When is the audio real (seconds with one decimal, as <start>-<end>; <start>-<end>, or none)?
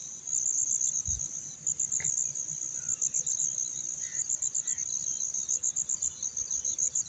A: 0.0-7.1